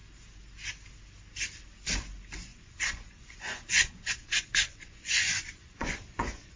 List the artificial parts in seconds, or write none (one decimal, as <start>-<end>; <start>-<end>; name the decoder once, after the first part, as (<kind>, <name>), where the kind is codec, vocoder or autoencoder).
2.5-6.6 (vocoder, Vocos)